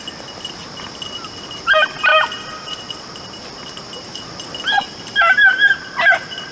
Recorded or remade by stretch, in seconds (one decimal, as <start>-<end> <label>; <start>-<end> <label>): 0.0-6.5 recorded